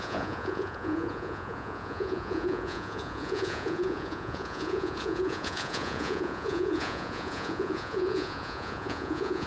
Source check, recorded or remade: remade